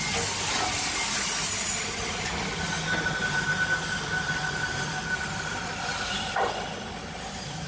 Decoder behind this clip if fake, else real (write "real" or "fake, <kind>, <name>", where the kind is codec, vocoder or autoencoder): real